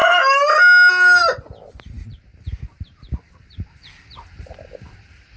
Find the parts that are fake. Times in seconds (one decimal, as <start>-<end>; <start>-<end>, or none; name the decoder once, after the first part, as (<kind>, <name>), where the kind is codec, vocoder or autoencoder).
1.7-5.4 (vocoder, BigVGAN v2)